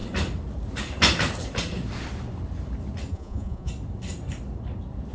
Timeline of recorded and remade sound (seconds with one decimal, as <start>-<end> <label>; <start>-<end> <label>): 0.0-3.1 recorded; 3.1-3.7 remade; 3.7-5.1 recorded